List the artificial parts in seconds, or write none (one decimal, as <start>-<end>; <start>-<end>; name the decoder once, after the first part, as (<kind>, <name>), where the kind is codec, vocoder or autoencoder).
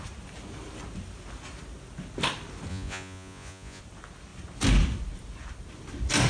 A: 2.7-3.8 (vocoder, Vocos)